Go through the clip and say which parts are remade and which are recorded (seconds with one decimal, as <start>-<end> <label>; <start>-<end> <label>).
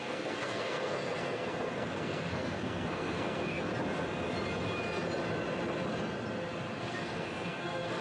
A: 0.0-3.7 remade; 3.7-6.8 recorded; 6.8-8.0 remade